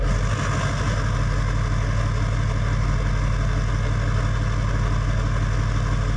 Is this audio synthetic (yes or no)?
no